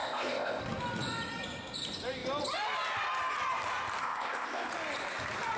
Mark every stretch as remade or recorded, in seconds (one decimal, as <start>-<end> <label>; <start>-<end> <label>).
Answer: 0.0-0.6 remade; 0.6-4.0 recorded; 4.0-4.7 remade; 4.7-5.6 recorded